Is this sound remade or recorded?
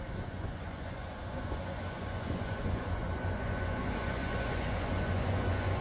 remade